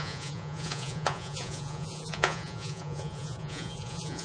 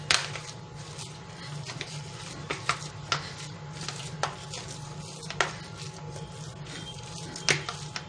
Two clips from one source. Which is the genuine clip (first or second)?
second